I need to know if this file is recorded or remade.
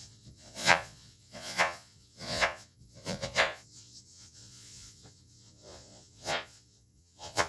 remade